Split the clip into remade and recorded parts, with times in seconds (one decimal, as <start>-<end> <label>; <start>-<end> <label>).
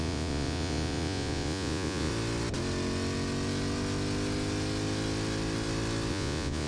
0.0-2.1 remade; 2.1-6.1 recorded; 6.1-6.7 remade